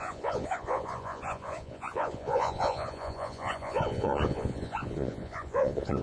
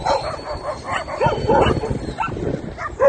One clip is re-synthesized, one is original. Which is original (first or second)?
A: second